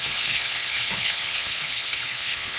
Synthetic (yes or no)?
yes